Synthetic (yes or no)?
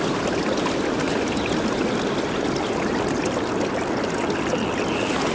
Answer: no